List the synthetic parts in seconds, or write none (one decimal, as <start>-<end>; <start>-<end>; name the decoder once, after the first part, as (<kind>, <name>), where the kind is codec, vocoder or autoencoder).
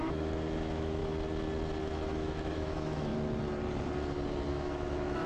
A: 0.0-1.0 (autoencoder, DAC-VAE); 1.8-3.1; 4.5-5.3